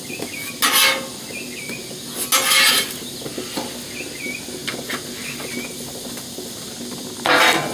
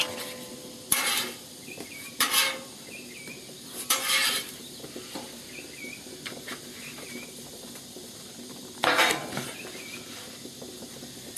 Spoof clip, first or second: second